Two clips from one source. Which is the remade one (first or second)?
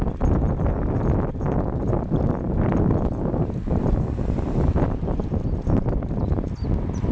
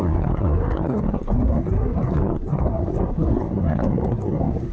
second